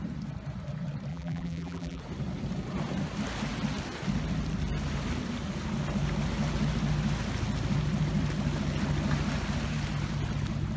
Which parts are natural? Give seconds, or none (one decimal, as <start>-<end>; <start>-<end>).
0.0-1.1; 2.0-10.8